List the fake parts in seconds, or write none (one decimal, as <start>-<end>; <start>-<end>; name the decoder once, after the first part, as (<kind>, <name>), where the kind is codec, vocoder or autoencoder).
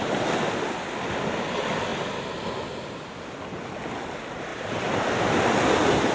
none